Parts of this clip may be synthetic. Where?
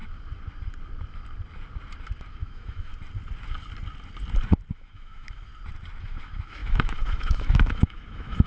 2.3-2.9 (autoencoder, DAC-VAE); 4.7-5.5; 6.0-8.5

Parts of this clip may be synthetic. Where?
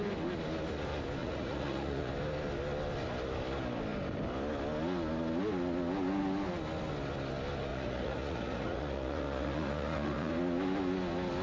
1.2-2.1 (vocoder, Vocos); 7.7-10.3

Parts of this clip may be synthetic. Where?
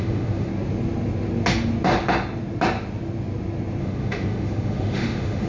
0.0-0.5 (autoencoder, DAC-VAE); 3.8-5.5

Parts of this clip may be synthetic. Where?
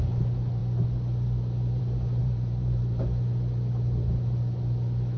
2.2-3.0 (vocoder, BigVGAN v2)